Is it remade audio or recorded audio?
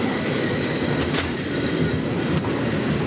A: remade